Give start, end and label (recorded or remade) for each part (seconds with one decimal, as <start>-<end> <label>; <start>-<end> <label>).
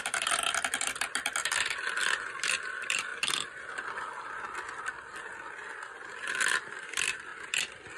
0.0-3.1 remade; 3.1-6.4 recorded; 6.4-7.3 remade; 7.3-8.0 recorded